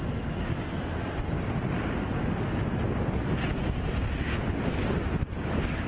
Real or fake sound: real